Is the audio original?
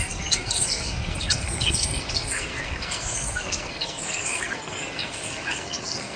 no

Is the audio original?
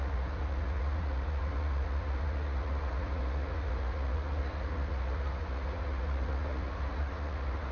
no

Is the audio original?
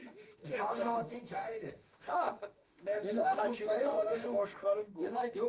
no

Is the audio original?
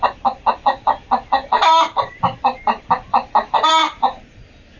no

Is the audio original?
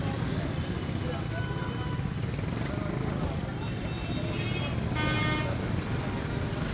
yes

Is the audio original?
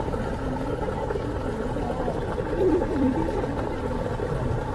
yes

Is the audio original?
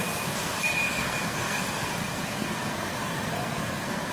no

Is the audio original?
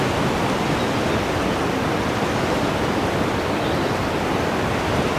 yes